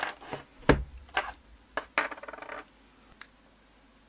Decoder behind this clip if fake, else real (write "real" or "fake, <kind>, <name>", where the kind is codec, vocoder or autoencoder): real